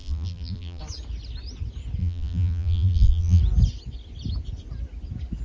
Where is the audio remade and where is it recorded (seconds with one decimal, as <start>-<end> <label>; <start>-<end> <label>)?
0.0-0.8 remade; 0.8-2.0 recorded; 2.0-3.4 remade; 3.4-5.4 recorded